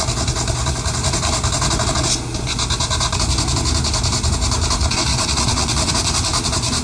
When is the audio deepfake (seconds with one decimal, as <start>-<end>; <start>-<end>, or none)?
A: 5.1-5.9